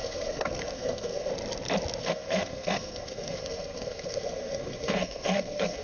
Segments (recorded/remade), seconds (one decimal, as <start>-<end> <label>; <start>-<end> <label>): 0.0-1.3 remade; 1.3-2.0 recorded; 2.0-5.8 remade